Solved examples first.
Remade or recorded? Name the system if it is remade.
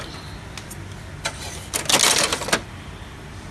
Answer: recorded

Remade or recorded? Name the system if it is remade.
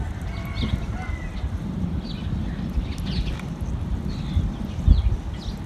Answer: recorded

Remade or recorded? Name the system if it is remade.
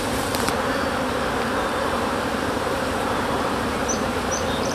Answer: remade, vocoder, BigVGAN v2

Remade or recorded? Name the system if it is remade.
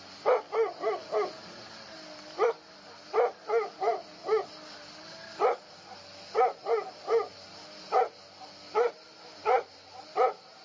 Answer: recorded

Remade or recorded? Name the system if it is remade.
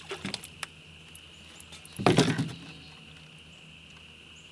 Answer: recorded